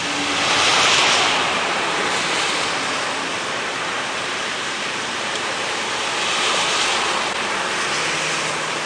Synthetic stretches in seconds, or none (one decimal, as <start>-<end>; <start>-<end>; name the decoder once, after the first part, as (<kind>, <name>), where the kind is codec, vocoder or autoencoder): 0.7-5.8 (vocoder, BigVGAN v2)